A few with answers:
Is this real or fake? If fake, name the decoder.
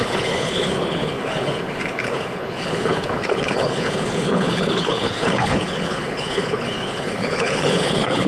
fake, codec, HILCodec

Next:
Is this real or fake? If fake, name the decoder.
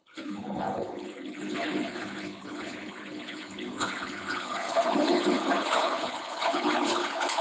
fake, codec, HILCodec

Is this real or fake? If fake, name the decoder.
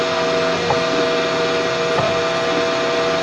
real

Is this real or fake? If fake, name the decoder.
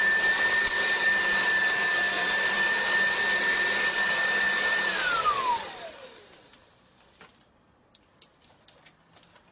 real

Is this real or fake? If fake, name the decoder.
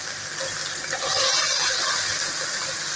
real